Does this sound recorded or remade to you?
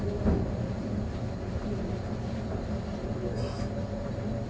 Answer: recorded